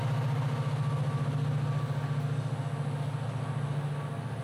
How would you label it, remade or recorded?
recorded